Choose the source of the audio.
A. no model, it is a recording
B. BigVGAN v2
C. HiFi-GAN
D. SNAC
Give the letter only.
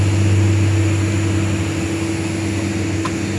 A